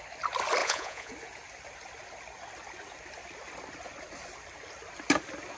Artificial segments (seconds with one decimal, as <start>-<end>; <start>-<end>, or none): 0.6-1.1